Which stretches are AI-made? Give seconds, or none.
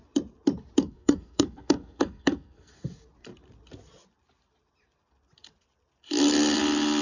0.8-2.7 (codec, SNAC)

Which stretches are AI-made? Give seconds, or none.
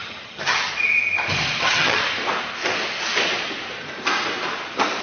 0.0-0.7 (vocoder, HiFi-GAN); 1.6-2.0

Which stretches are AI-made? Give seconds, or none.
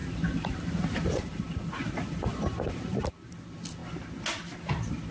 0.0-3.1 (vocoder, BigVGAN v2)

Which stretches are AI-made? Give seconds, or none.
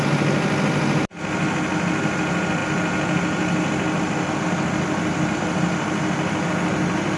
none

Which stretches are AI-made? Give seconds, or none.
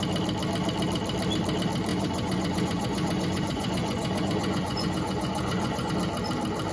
1.9-5.9 (vocoder, Vocos)